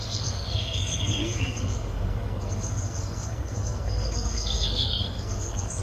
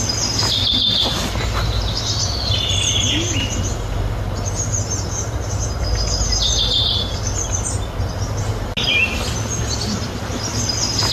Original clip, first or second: second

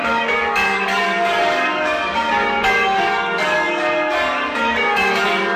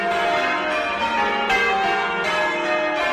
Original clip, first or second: second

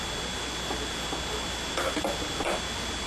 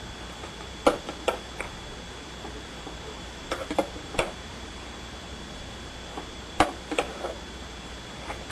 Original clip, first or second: first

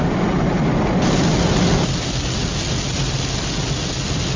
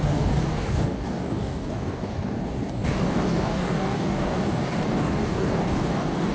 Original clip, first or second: first